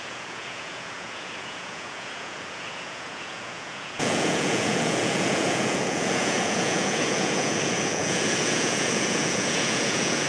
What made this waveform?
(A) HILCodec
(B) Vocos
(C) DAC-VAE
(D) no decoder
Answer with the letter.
B